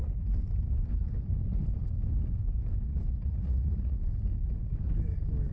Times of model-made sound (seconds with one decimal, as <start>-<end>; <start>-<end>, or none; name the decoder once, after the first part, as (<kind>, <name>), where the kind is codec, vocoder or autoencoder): 3.2-4.0 (vocoder, Vocos)